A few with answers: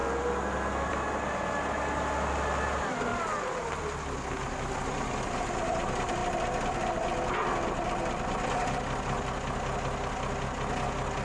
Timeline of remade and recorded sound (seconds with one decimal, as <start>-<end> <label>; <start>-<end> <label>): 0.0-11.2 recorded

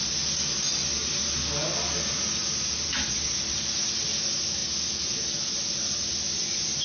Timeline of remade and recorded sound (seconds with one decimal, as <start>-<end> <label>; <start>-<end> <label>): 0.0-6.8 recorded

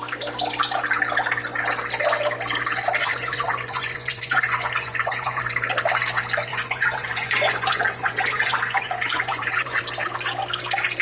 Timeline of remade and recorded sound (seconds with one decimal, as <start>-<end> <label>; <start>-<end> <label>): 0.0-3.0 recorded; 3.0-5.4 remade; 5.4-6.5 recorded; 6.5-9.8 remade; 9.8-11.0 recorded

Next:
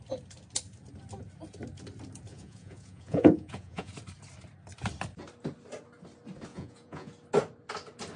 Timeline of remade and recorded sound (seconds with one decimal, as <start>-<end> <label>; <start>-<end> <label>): 0.0-2.3 recorded; 2.3-3.9 remade; 3.9-6.5 recorded; 6.5-7.1 remade; 7.1-8.2 recorded

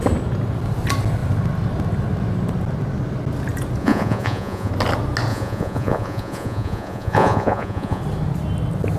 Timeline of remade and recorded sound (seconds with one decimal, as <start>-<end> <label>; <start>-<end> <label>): 0.0-3.8 recorded; 3.8-4.7 remade; 4.7-5.3 recorded; 5.3-8.0 remade; 8.0-9.0 recorded

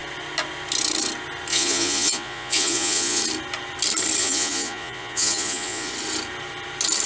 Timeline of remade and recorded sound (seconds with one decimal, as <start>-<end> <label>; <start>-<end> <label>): 0.0-1.5 recorded; 1.5-3.2 remade; 3.2-4.2 recorded; 4.2-5.9 remade; 5.9-7.1 recorded